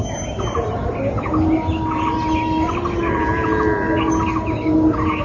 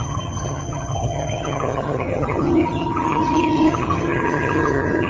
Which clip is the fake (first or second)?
second